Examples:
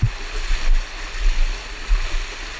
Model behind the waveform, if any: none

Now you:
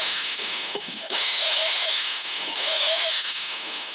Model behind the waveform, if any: autoencoder, DAC-VAE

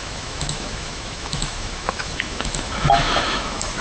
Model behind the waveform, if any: autoencoder, DAC-VAE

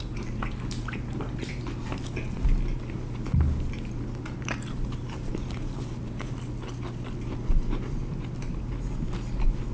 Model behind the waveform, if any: none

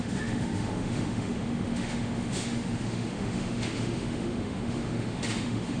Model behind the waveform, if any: autoencoder, DAC-VAE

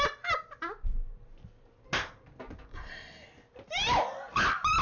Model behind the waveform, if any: none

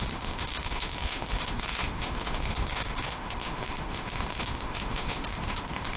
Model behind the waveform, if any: autoencoder, DAC-VAE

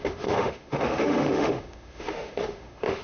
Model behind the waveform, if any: autoencoder, DAC-VAE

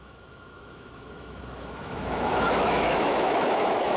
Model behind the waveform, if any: autoencoder, DAC-VAE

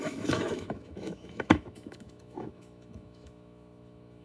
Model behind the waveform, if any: autoencoder, DAC-VAE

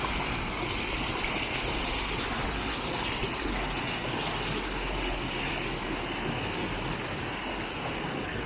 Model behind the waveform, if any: none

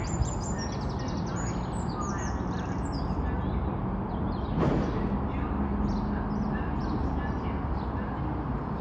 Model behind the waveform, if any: none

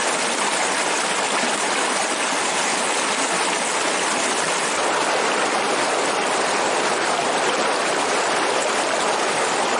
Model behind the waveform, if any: none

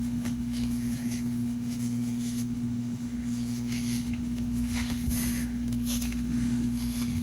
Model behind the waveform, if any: autoencoder, DAC-VAE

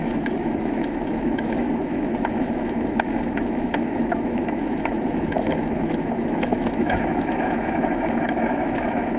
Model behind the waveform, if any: autoencoder, DAC-VAE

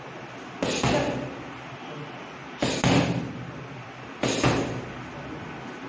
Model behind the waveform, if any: none